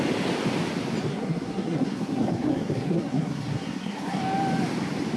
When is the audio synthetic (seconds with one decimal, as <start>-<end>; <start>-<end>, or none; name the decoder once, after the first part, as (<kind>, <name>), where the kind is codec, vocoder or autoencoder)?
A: 1.1-4.2 (codec, SNAC)